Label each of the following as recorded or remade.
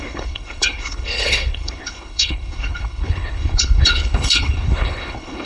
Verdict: remade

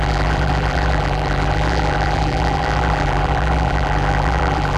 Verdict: remade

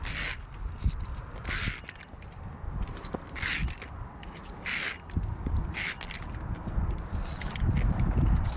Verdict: recorded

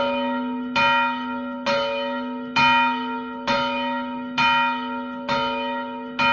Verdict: recorded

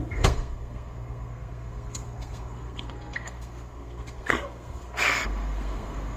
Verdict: remade